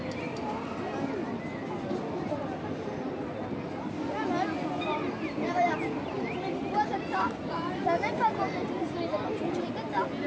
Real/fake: real